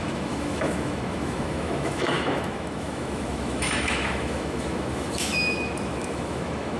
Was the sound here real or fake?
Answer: fake